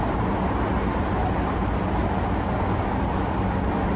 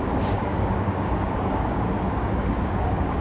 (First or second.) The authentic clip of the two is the first